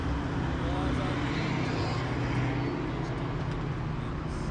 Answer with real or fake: real